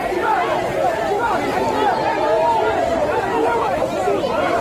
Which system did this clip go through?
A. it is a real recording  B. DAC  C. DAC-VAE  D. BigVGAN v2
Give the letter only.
A